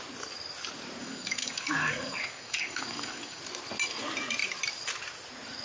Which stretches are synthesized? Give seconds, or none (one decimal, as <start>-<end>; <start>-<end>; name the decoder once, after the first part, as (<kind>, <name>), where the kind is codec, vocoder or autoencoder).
1.0-3.4 (codec, DAC)